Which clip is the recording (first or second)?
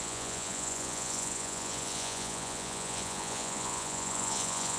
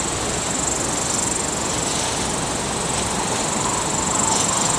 second